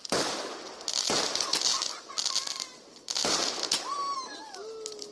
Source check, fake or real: real